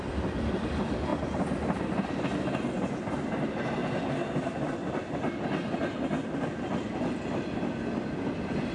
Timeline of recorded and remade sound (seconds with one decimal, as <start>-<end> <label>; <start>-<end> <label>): 0.0-8.7 recorded